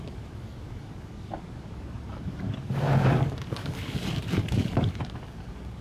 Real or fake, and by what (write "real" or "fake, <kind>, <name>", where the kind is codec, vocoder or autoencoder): fake, codec, DAC